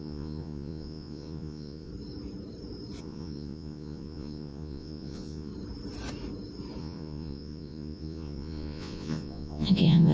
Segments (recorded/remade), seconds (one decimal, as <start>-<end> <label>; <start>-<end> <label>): 0.0-1.9 remade; 1.9-3.0 recorded; 3.0-5.5 remade; 5.5-6.8 recorded; 6.8-10.1 remade

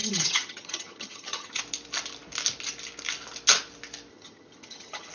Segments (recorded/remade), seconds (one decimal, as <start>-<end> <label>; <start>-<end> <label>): 0.0-1.6 remade; 1.6-4.1 recorded; 4.1-5.1 remade